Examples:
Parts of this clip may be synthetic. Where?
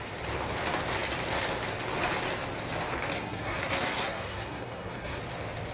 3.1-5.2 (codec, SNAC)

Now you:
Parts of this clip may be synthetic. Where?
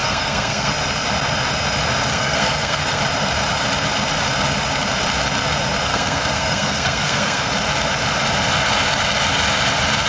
0.0-0.7 (codec, SNAC); 2.1-3.0; 5.9-7.5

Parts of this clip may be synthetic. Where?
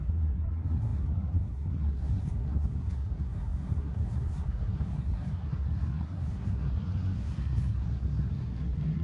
0.0-9.0 (codec, SNAC)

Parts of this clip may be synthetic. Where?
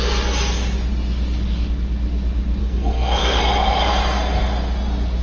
2.6-3.4 (codec, SNAC)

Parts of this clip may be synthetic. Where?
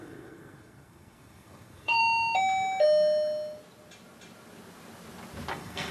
0.0-2.0 (codec, SNAC); 5.5-5.9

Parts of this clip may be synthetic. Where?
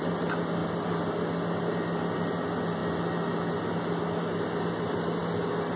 none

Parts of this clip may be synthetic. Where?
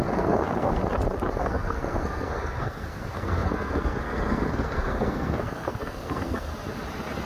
0.0-0.8 (codec, SNAC); 1.4-6.5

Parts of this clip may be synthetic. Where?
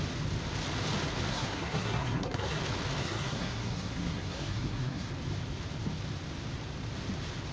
1.3-2.6 (codec, SNAC); 3.0-5.1